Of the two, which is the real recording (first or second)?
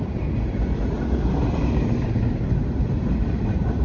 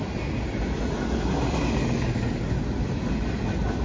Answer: second